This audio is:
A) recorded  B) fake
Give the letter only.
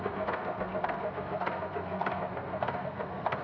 B